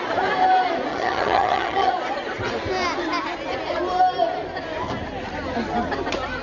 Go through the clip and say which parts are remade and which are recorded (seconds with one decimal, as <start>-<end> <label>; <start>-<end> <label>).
0.0-0.9 recorded; 0.9-1.9 remade; 1.9-6.4 recorded